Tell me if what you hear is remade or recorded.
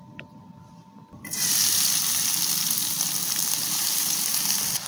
recorded